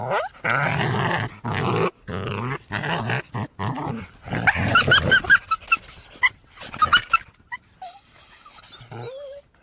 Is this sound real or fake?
real